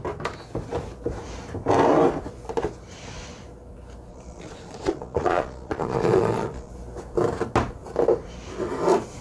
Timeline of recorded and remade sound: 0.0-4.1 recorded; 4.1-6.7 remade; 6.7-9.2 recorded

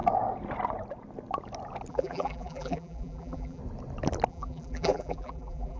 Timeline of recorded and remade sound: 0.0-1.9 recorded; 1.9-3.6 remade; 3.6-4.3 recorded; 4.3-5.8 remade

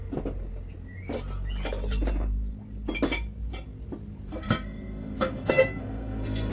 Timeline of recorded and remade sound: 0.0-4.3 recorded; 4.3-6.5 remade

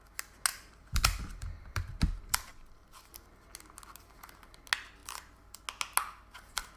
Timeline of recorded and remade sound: 0.0-0.5 recorded; 0.5-1.8 remade; 1.8-2.5 recorded; 2.5-3.1 remade; 3.1-5.0 recorded; 5.0-5.6 remade; 5.6-6.8 recorded

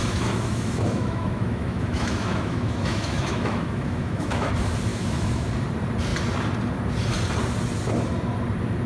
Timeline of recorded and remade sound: 0.0-4.5 remade; 4.5-4.9 recorded; 4.9-5.5 remade; 5.5-8.9 recorded

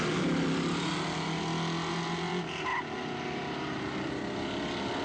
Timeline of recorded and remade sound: 0.0-5.0 recorded

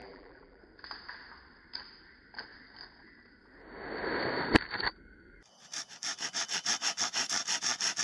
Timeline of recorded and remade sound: 0.0-0.6 remade; 0.6-8.0 recorded